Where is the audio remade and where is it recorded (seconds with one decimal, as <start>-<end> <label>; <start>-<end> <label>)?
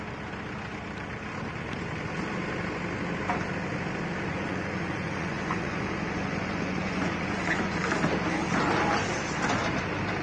0.0-4.3 recorded; 4.3-7.8 remade; 7.8-10.2 recorded